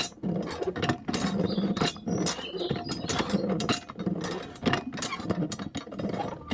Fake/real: real